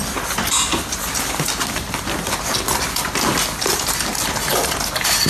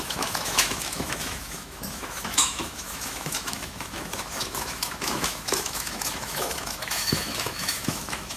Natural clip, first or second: first